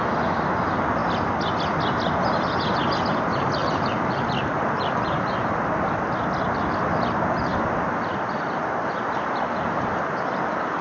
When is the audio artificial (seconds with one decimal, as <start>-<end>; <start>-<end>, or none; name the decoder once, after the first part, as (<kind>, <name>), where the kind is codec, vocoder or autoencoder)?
3.6-5.5 (vocoder, BigVGAN v2); 7.5-10.0